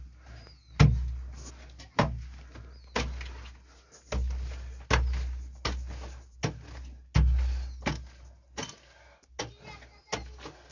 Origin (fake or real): real